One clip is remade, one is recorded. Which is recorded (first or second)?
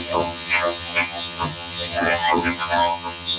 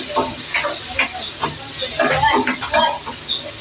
second